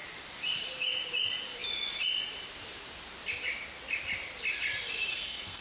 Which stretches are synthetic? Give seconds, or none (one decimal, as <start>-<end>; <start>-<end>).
5.1-5.6